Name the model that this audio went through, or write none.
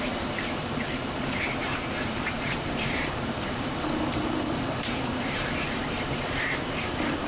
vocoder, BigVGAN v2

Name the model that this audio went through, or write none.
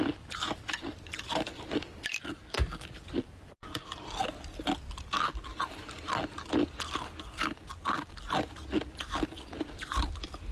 none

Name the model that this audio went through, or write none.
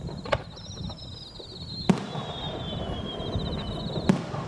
none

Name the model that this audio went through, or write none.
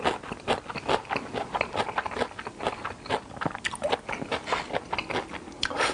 none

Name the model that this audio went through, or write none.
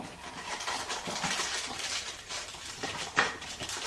vocoder, BigVGAN v2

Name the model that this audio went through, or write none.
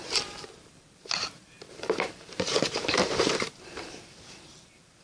vocoder, BigVGAN v2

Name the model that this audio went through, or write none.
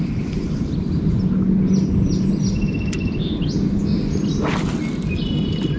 none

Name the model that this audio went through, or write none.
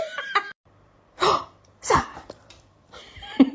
vocoder, BigVGAN v2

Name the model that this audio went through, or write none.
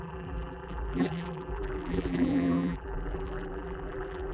vocoder, BigVGAN v2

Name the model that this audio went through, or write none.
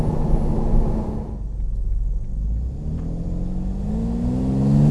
none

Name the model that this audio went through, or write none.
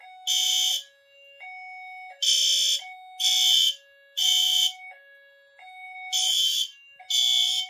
none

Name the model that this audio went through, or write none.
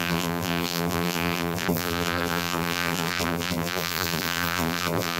vocoder, BigVGAN v2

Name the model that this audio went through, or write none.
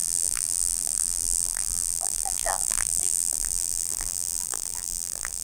vocoder, BigVGAN v2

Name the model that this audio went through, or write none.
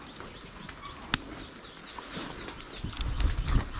none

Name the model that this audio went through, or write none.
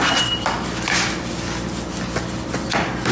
none